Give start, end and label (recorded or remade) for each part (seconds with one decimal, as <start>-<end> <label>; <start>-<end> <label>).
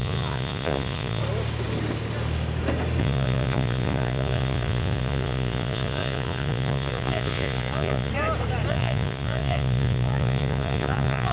0.0-1.2 remade; 1.2-3.0 recorded; 3.0-8.1 remade; 8.1-8.7 recorded; 8.7-11.3 remade